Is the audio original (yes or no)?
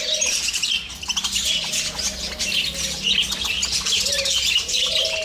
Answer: yes